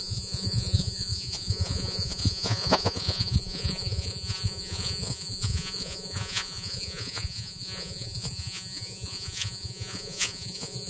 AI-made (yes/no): yes